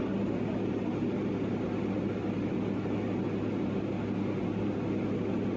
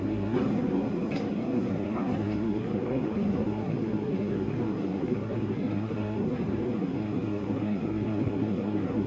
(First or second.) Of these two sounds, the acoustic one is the first